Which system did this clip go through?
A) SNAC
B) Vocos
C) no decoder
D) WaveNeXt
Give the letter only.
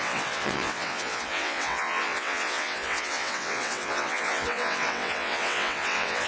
D